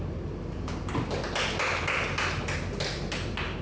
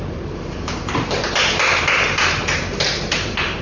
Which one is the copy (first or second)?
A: second